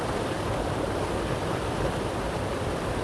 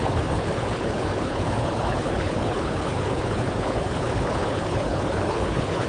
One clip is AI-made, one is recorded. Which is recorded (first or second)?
first